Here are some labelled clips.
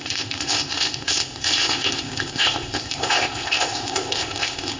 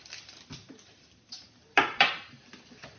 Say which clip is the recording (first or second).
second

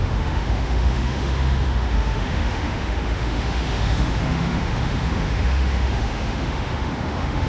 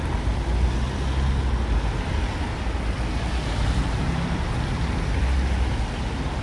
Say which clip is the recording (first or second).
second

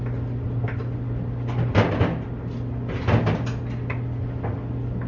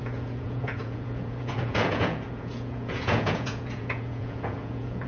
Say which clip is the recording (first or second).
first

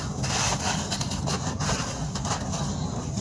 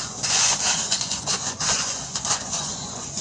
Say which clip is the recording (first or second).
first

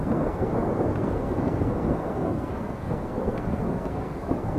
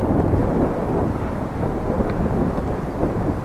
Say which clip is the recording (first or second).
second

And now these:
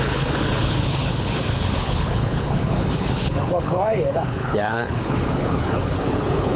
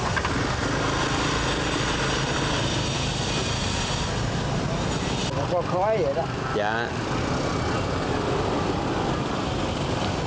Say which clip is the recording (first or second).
second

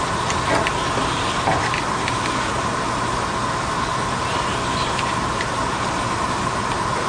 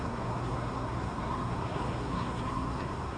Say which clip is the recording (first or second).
first